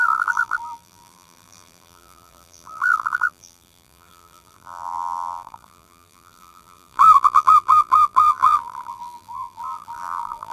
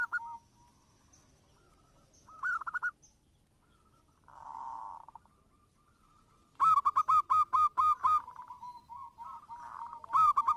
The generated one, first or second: first